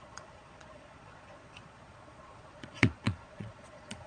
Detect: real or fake fake